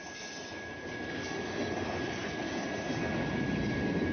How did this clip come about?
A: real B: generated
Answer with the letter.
A